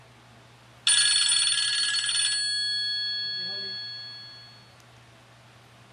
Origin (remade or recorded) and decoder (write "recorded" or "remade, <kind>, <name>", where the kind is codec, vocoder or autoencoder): recorded